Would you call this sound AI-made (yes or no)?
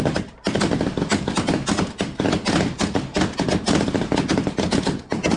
no